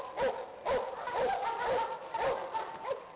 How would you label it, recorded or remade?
recorded